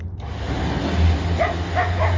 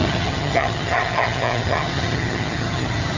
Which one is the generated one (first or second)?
second